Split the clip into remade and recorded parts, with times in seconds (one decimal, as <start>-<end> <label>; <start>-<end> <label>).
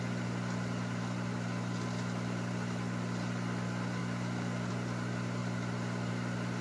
0.0-6.6 recorded